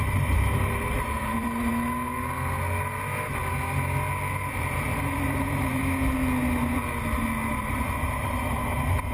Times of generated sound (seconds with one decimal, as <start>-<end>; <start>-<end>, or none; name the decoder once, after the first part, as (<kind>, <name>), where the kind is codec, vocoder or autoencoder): 0.0-1.7 (vocoder, BigVGAN v2); 4.6-5.8; 7.5-9.1